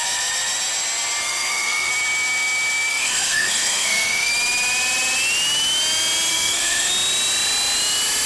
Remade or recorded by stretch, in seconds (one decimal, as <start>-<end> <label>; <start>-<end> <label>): 0.0-1.2 recorded; 1.2-1.9 remade; 1.9-2.9 recorded; 2.9-4.3 remade; 4.3-6.3 recorded; 6.3-6.9 remade; 6.9-8.3 recorded